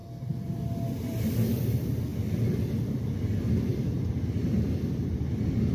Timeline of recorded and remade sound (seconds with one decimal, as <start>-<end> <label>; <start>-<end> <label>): 0.0-5.7 recorded